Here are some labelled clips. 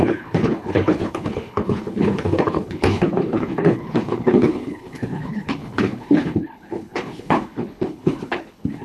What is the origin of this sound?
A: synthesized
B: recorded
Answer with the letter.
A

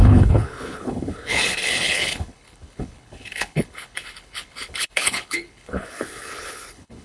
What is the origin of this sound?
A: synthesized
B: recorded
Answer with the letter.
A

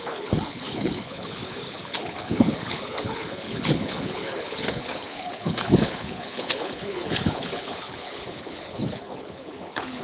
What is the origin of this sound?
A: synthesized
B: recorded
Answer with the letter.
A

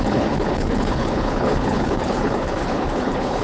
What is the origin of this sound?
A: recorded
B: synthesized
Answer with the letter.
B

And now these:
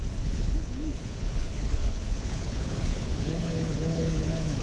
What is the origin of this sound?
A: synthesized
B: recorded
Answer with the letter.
A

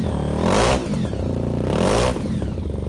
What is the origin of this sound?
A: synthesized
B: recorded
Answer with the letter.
B